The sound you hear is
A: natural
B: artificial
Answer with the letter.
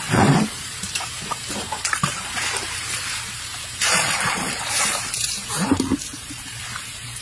B